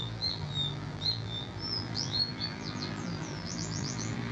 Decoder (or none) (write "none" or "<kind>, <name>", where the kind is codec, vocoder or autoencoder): vocoder, BigVGAN v2